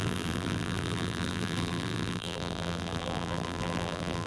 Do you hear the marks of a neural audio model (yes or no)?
yes